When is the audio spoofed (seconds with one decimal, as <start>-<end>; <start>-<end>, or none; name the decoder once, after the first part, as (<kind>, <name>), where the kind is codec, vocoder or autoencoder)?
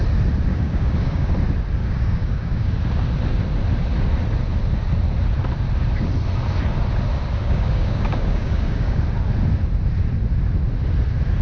0.5-1.3 (codec, DAC); 1.8-2.7; 7.4-9.0